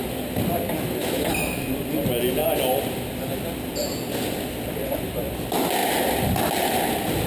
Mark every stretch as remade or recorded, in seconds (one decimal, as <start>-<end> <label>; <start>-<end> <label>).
0.0-1.0 recorded; 1.0-1.6 remade; 1.6-7.3 recorded